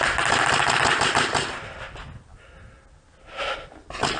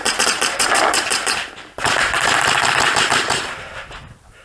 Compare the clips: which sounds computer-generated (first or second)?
second